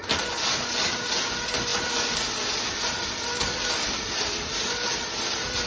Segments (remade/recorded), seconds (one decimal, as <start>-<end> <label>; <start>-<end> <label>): 0.0-5.7 recorded